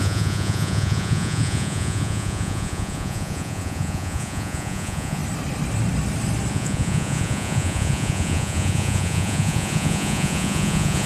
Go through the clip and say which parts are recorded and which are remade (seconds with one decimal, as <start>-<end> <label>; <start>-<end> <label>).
0.0-5.2 remade; 5.2-6.5 recorded; 6.5-11.1 remade